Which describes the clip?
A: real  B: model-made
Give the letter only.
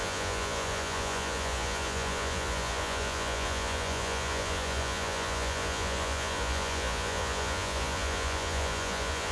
B